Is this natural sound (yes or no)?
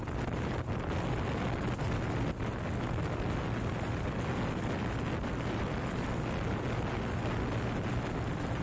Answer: yes